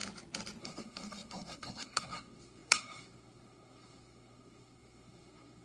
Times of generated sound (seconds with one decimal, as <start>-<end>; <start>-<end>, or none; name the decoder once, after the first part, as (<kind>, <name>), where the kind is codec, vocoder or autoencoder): 0.6-5.6 (codec, SNAC)